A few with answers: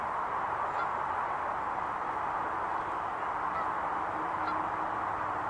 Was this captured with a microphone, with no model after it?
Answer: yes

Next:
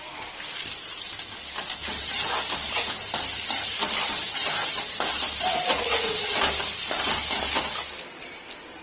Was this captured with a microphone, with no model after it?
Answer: yes